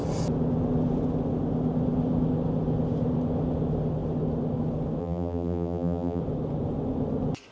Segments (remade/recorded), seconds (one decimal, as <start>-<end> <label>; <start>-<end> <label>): 0.0-5.0 recorded; 5.0-6.2 remade; 6.2-7.5 recorded

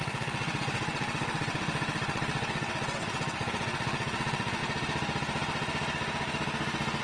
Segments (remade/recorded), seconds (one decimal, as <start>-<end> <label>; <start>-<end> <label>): 0.0-4.6 remade; 4.6-7.0 recorded

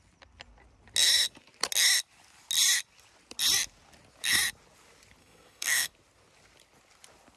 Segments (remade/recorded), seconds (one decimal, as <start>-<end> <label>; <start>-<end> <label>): 0.0-5.2 recorded; 5.2-5.9 remade; 5.9-7.4 recorded

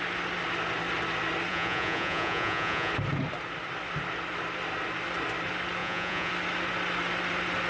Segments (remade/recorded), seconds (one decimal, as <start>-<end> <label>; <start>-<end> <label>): 0.0-1.5 recorded; 1.5-2.9 remade; 2.9-5.8 recorded; 5.8-6.3 remade; 6.3-7.7 recorded